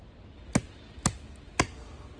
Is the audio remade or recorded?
recorded